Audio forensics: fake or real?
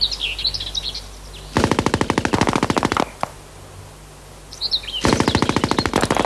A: real